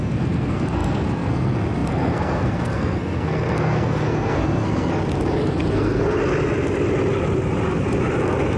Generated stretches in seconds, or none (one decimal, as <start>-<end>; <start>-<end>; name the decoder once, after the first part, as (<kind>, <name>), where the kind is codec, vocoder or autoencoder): 0.0-5.0 (codec, SNAC); 5.7-6.2